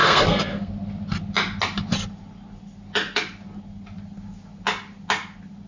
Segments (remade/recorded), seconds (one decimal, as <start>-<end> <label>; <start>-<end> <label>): 0.0-0.7 remade; 0.7-5.7 recorded